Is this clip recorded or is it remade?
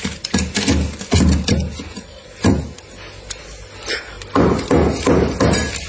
recorded